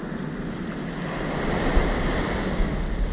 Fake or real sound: real